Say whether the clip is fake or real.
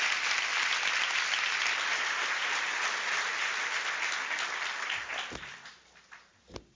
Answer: real